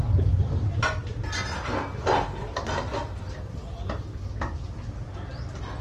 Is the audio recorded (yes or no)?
yes